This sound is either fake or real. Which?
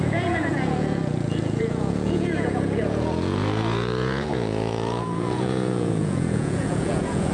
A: fake